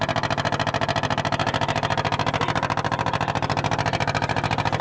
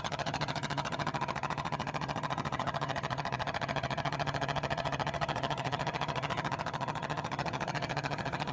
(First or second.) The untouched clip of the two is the first